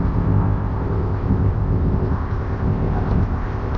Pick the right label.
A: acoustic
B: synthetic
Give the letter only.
B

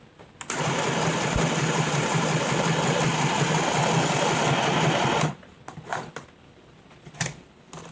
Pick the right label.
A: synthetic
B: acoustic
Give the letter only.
B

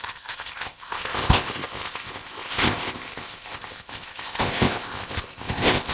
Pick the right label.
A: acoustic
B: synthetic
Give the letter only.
B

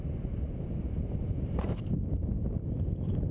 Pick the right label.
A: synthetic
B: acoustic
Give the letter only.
B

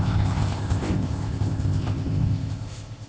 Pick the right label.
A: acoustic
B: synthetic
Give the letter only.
B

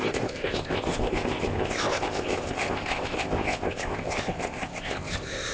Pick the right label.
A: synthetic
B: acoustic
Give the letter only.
A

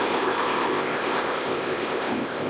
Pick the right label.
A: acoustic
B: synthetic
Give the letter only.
B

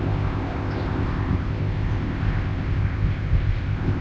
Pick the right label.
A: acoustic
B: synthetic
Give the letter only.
B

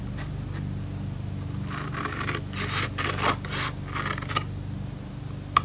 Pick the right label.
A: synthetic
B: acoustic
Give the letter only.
B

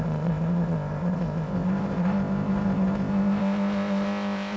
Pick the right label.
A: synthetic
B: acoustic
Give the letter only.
A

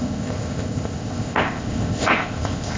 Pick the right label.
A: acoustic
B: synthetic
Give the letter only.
B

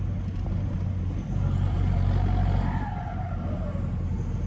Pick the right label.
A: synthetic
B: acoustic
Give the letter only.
B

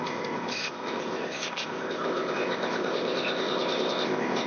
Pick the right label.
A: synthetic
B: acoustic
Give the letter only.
A